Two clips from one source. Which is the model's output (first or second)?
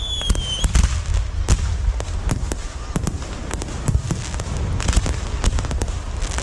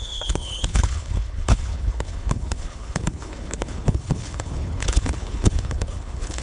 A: second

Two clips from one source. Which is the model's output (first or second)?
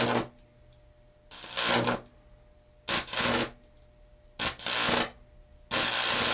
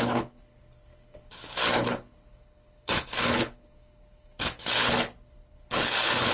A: second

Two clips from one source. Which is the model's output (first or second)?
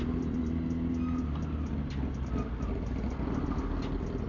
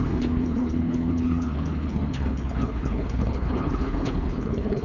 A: second